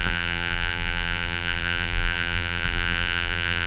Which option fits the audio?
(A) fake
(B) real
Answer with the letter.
A